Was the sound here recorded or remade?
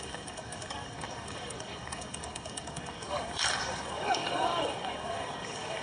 remade